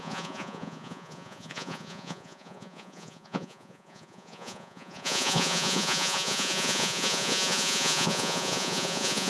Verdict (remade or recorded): remade